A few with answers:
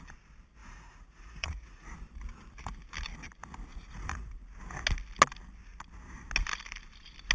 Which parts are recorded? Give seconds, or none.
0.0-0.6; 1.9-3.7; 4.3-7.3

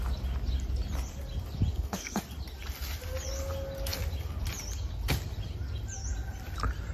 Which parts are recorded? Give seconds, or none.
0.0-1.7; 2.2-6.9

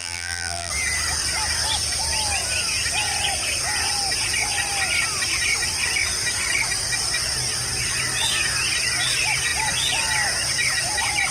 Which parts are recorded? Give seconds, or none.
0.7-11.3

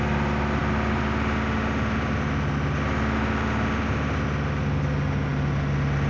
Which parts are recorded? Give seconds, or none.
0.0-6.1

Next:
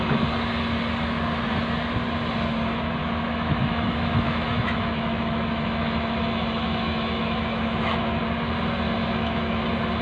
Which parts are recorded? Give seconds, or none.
0.0-3.0; 8.2-9.0; 9.6-10.0